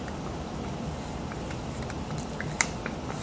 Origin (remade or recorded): recorded